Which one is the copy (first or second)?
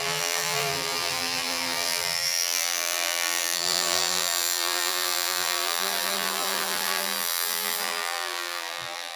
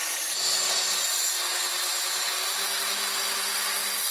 first